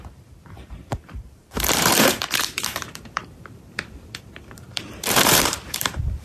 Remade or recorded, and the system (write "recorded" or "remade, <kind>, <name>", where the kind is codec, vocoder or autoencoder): remade, vocoder, BigVGAN v2